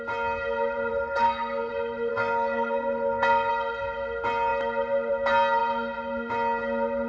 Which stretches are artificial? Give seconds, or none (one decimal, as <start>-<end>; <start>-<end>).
0.9-1.7; 2.1-3.5

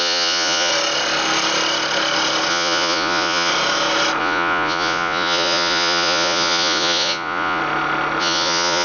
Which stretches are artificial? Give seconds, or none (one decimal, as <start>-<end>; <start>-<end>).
0.0-0.7; 2.5-3.5; 4.2-7.6; 8.2-8.8

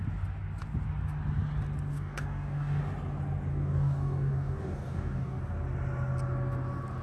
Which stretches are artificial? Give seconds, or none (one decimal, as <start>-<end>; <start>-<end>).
1.9-2.8; 3.5-5.4

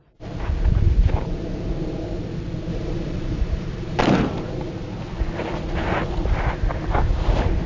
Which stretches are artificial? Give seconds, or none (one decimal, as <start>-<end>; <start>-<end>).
2.7-4.0

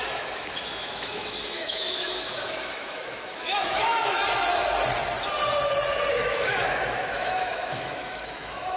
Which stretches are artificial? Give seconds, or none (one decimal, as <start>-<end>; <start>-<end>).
0.0-4.2; 6.1-8.8